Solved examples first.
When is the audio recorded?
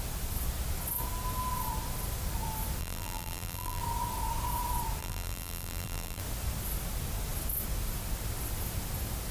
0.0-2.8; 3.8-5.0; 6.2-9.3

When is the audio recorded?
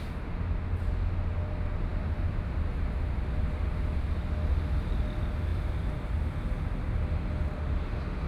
0.0-1.9; 4.2-5.5; 6.2-8.3